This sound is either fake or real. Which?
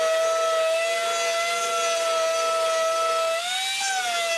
real